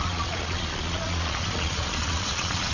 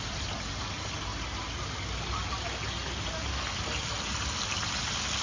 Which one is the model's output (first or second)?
first